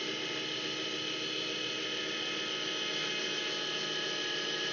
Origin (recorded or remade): recorded